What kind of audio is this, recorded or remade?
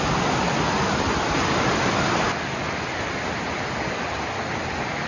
recorded